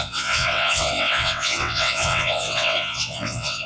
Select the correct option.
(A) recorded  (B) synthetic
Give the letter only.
B